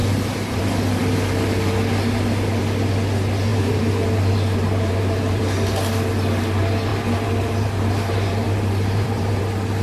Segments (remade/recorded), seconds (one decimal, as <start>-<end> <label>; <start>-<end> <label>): 0.0-0.6 remade; 0.6-3.5 recorded; 3.5-5.4 remade; 5.4-6.9 recorded; 6.9-9.4 remade; 9.4-9.8 recorded